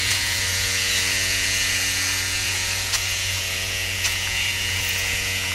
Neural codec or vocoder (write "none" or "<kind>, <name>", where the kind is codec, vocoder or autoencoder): vocoder, Vocos